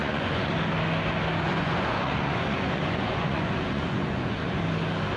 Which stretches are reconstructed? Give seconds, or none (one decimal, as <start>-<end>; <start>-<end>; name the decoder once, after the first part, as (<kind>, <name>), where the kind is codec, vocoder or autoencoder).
0.0-0.5 (vocoder, Vocos); 1.5-4.6

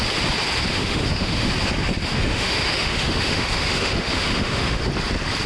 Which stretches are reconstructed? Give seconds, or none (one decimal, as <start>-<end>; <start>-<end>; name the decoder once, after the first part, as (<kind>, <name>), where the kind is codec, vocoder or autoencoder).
0.7-1.5 (autoencoder, DAC-VAE); 2.1-4.9

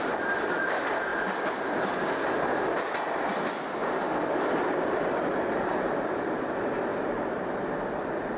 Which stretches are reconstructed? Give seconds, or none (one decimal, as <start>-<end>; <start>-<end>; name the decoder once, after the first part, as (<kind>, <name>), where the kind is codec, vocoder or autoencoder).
3.8-5.6 (vocoder, BigVGAN v2); 6.9-8.4

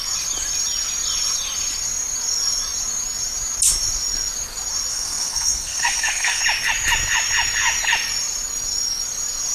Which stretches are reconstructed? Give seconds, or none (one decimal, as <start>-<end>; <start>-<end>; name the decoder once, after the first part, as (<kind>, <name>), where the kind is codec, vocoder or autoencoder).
4.9-6.4 (codec, SNAC)

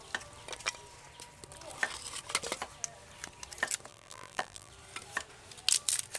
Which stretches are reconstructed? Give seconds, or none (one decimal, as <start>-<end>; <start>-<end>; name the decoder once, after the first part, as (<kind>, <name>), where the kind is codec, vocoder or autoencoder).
3.9-4.7 (vocoder, BigVGAN v2)

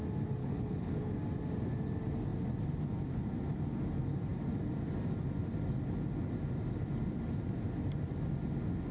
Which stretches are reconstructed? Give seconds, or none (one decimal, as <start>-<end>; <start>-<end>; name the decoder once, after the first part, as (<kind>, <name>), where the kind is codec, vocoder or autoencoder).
0.4-1.1 (codec, HILCodec)

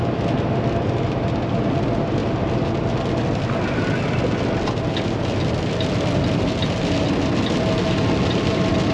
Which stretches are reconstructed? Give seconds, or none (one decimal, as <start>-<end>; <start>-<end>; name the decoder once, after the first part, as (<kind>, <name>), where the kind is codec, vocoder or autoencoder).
none